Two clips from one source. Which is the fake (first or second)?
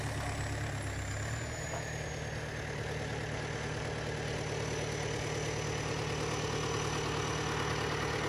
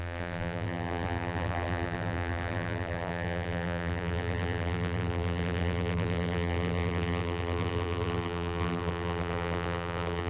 second